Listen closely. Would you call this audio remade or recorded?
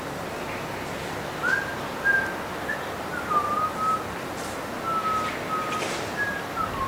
recorded